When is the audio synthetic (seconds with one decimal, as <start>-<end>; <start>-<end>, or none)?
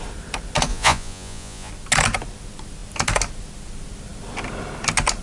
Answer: 0.7-1.7